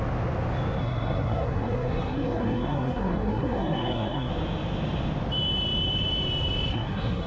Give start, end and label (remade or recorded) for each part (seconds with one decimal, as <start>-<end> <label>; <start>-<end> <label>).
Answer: 0.0-0.8 recorded; 0.8-4.3 remade; 4.3-6.7 recorded; 6.7-7.3 remade